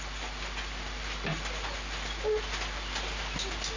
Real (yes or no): yes